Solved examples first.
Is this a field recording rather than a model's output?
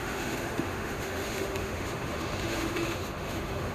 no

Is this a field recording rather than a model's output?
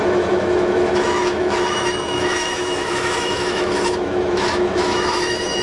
no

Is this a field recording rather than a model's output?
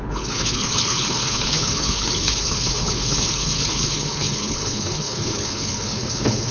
no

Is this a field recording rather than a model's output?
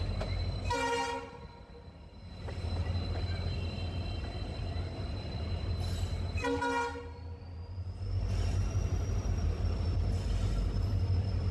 yes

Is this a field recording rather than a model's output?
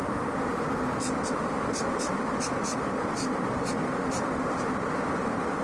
yes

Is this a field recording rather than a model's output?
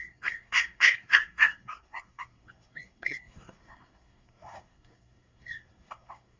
no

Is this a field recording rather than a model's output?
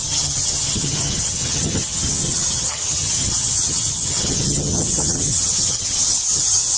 no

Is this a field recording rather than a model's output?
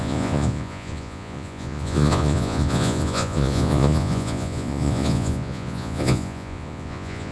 no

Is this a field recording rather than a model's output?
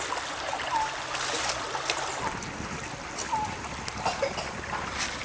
yes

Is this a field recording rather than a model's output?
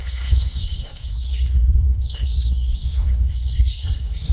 no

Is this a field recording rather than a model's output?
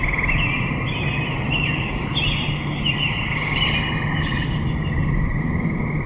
yes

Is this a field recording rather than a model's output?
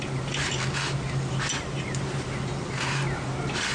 yes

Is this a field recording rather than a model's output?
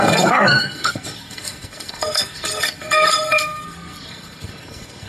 no